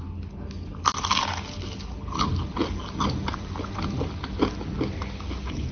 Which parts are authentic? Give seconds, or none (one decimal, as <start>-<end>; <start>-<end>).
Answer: 0.0-5.7